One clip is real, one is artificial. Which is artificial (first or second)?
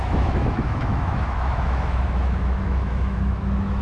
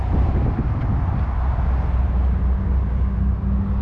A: first